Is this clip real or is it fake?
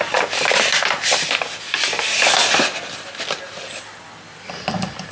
real